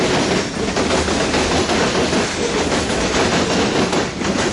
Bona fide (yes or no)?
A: yes